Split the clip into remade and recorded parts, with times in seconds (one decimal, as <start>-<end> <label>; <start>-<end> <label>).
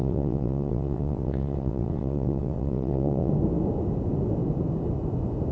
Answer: 0.0-3.3 remade; 3.3-5.5 recorded